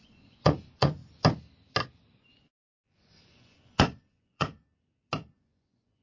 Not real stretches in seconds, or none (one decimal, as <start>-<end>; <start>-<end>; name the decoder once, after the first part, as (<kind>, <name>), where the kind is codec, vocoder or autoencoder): 0.0-1.0 (vocoder, Vocos); 2.2-4.6; 5.3-6.0